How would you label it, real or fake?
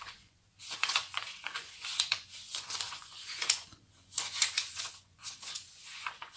fake